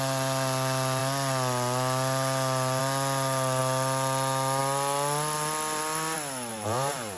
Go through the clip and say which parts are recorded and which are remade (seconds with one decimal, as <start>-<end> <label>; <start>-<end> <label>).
0.0-6.5 recorded; 6.5-7.2 remade